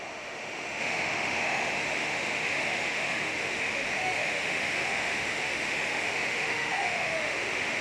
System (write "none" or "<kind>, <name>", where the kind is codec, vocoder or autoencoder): autoencoder, DAC-VAE